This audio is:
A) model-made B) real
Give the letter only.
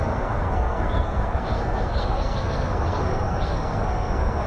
A